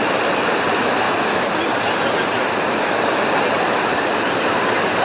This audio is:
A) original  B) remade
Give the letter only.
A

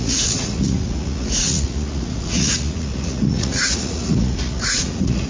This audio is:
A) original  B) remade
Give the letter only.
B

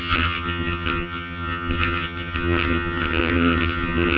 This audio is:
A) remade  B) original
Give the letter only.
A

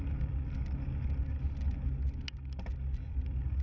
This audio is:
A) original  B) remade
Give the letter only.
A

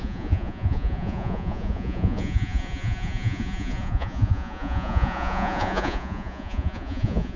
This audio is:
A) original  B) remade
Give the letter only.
B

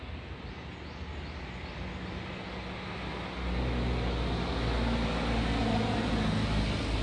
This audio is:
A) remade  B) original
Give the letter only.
B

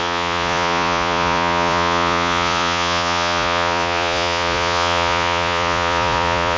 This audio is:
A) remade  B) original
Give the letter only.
A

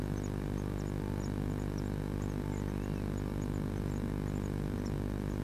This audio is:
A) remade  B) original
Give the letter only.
B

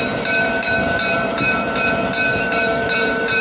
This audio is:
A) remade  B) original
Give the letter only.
A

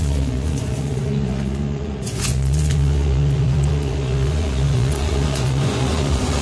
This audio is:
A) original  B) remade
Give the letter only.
B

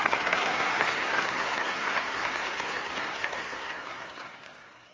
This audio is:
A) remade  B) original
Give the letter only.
A